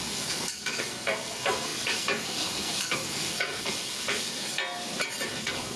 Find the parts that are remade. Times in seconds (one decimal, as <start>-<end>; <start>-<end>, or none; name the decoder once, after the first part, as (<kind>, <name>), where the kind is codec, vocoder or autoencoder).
0.0-4.6 (codec, SNAC); 5.3-5.8